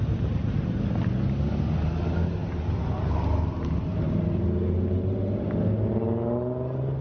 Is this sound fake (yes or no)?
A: no